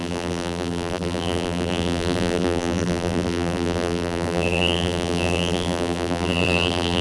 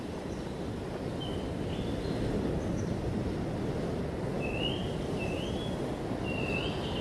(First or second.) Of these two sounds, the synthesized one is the first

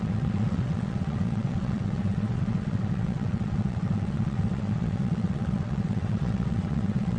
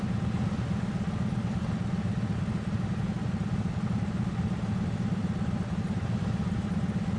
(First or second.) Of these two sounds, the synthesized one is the first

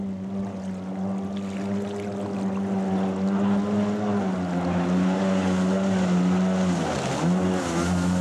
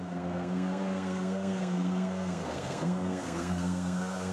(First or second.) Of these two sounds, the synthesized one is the second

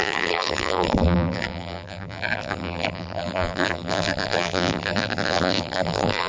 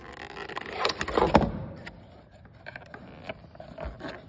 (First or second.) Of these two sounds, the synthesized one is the first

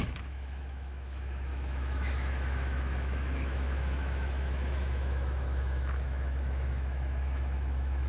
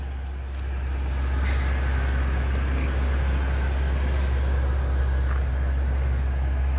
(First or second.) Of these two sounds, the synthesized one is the first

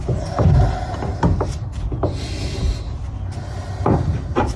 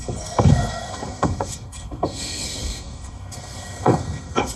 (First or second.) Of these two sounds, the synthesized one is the second